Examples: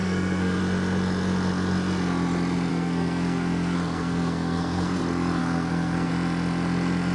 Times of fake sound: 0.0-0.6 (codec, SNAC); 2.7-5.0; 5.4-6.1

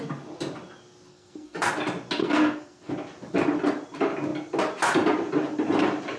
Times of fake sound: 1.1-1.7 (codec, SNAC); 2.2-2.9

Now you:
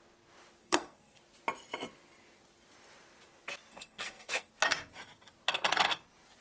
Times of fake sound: 0.6-1.2 (codec, SNAC); 3.7-4.5

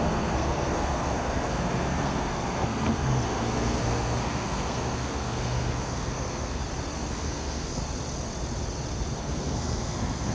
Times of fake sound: 0.0-6.6 (codec, SNAC); 7.1-7.8; 9.2-10.3